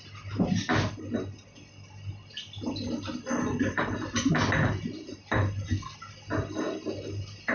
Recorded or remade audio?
recorded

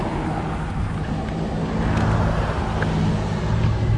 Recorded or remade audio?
recorded